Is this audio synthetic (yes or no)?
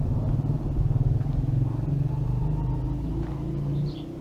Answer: no